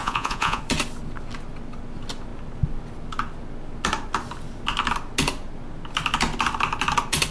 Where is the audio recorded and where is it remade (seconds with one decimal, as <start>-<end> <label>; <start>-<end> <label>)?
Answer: 0.0-0.6 remade; 0.6-7.3 recorded